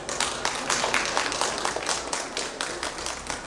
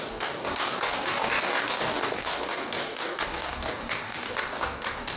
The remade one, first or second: second